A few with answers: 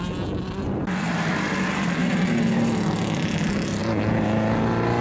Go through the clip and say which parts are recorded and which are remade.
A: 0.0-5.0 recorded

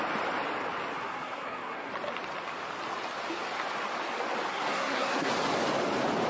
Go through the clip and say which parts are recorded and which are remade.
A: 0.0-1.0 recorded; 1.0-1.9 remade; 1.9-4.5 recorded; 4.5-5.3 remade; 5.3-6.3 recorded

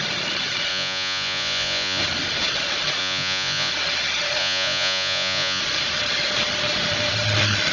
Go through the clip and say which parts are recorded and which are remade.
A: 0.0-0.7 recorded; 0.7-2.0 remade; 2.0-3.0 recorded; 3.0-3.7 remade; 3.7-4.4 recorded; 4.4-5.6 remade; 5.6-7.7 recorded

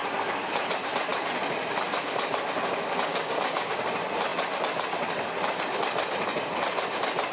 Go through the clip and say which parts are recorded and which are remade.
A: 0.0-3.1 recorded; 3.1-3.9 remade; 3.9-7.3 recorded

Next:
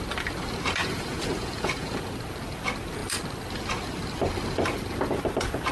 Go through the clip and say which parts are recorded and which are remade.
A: 0.0-0.8 recorded; 0.8-2.1 remade; 2.1-5.7 recorded

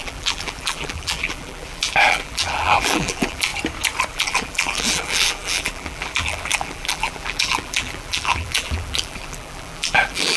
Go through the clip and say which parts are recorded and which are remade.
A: 0.0-3.5 remade; 3.5-4.1 recorded; 4.1-10.4 remade